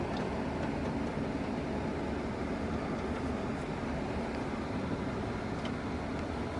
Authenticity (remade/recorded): recorded